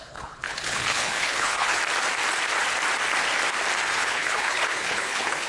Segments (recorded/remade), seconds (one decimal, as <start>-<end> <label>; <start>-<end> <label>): 0.0-1.8 remade; 1.8-3.9 recorded; 3.9-5.5 remade